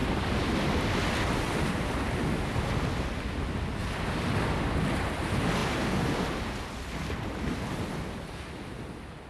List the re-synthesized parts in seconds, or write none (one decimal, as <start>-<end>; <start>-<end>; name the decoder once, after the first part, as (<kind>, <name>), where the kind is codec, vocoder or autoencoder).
none